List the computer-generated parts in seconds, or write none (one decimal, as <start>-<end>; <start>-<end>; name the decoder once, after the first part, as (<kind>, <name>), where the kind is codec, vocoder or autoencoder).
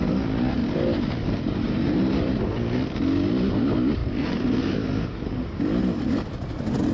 0.6-2.4 (vocoder, BigVGAN v2); 4.0-5.6